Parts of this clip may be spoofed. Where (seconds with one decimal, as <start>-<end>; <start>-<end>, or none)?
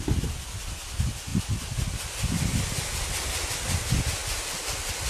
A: 4.2-5.1